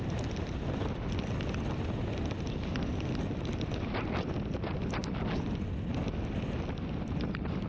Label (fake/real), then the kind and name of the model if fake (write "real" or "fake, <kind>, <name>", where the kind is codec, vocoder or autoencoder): real